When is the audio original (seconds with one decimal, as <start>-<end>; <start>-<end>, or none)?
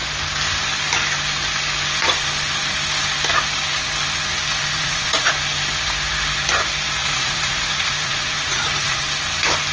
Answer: 0.0-4.7; 5.3-7.0; 9.0-9.7